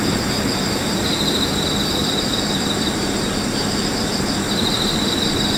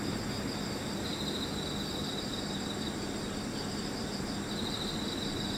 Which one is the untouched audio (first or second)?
second